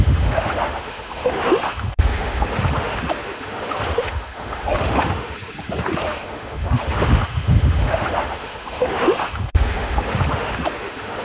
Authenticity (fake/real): fake